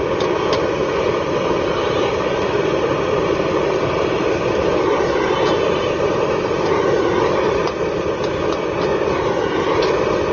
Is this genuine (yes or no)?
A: yes